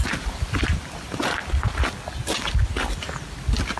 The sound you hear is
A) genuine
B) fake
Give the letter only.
A